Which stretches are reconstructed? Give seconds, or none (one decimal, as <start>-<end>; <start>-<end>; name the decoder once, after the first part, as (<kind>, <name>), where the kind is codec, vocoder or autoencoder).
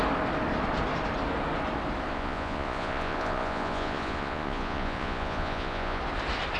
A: 2.1-6.0 (vocoder, Vocos)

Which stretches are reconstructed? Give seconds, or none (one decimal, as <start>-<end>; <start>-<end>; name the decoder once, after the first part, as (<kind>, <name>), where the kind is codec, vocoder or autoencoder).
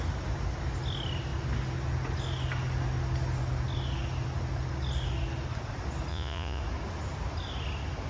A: 6.1-6.6 (vocoder, Vocos)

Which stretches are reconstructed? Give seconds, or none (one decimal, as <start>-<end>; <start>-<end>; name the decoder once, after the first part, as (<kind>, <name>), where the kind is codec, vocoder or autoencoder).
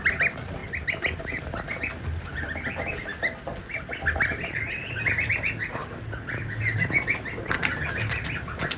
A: none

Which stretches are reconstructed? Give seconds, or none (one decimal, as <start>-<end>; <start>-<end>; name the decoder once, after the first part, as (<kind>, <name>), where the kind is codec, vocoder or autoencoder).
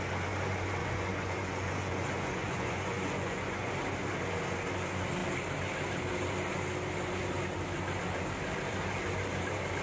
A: 0.8-3.7 (vocoder, Vocos)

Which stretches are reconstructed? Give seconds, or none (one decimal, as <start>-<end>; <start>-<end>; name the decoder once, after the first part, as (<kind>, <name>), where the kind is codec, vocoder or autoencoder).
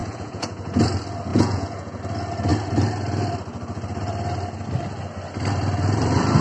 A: 0.0-0.8 (vocoder, Vocos); 1.3-2.0